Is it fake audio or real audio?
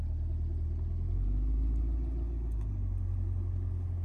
real